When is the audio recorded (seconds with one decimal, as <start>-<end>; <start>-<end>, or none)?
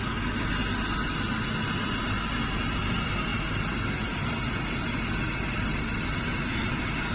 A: 0.0-7.1